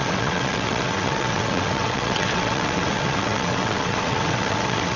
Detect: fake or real fake